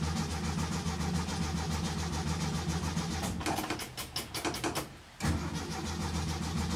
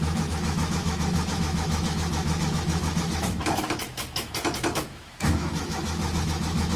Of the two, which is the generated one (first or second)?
second